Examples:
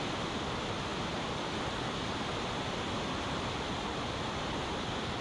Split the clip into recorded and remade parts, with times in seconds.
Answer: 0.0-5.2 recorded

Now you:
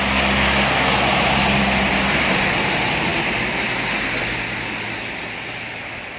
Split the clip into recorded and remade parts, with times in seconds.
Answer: 0.0-6.2 recorded

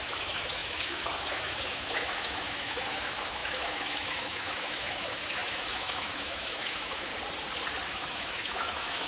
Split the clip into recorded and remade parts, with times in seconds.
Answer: 0.0-7.1 remade; 7.1-7.9 recorded; 7.9-9.1 remade

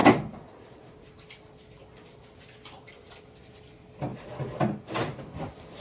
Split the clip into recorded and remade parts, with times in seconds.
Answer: 0.0-5.8 recorded